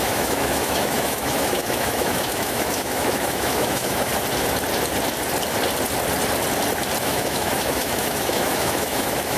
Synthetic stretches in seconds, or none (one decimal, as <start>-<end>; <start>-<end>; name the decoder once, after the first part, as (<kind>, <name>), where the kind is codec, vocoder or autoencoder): 0.0-4.1 (autoencoder, DAC-VAE); 7.0-9.4